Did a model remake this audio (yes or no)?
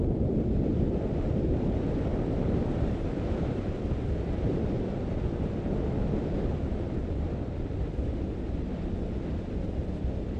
yes